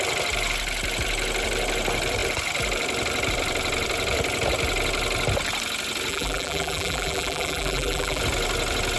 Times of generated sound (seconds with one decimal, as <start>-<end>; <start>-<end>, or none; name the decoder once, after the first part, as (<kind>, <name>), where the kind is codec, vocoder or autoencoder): 6.1-8.2 (vocoder, BigVGAN v2)